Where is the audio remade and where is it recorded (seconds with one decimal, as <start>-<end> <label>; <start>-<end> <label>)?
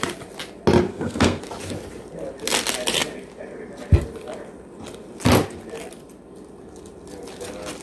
0.0-0.9 recorded; 0.9-1.4 remade; 1.4-7.8 recorded